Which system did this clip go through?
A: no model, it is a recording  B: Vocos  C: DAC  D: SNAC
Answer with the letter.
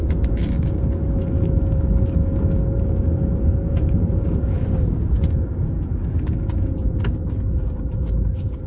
C